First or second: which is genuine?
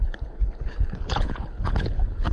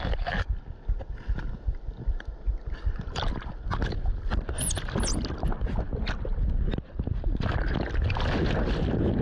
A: second